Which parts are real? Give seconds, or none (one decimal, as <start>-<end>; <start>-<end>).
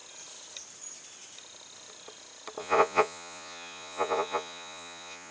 0.0-2.6